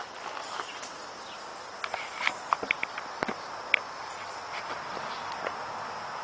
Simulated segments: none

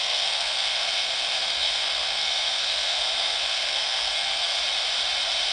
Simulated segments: 0.0-4.6 (codec, SNAC)

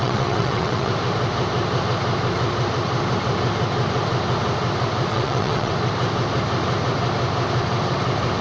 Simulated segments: 0.0-0.9 (vocoder, WaveNeXt); 5.1-5.7